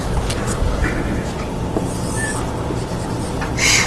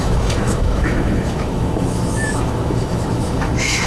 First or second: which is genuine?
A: first